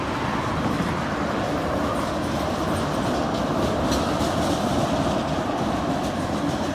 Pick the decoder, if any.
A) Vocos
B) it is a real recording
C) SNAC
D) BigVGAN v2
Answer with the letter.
B